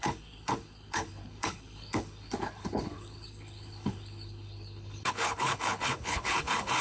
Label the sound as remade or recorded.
remade